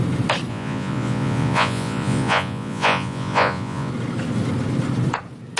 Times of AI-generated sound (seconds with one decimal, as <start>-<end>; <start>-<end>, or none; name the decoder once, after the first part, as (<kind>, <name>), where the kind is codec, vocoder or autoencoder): 0.5-3.9 (vocoder, Vocos)